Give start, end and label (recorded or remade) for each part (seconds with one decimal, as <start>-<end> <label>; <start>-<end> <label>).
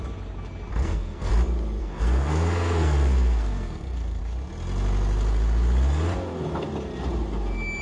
0.0-0.7 recorded; 0.7-1.3 remade; 1.3-1.8 recorded; 1.8-4.2 remade; 4.2-7.8 recorded